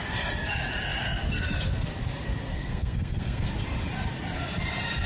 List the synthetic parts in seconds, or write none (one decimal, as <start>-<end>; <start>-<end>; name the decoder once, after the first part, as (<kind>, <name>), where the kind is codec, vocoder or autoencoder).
2.5-3.5 (codec, SNAC)